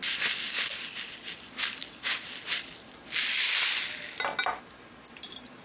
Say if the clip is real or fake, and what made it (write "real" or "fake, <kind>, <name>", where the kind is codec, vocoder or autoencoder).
real